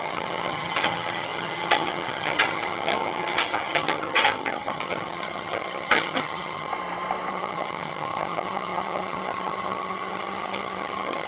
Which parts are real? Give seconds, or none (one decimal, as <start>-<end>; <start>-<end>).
6.7-7.3